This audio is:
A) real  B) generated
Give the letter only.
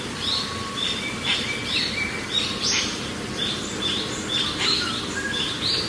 B